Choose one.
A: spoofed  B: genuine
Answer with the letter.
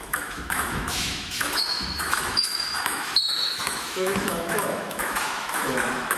A